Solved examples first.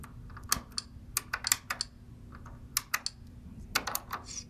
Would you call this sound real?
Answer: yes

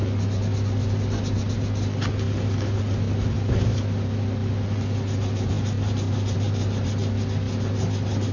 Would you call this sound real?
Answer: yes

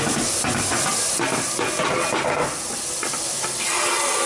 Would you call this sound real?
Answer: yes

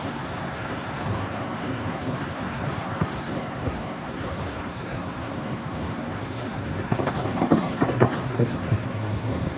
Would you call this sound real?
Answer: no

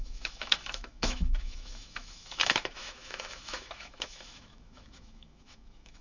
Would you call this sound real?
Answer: no